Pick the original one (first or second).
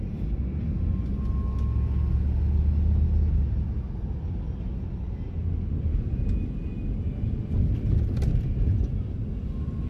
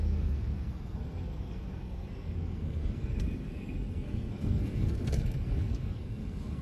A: first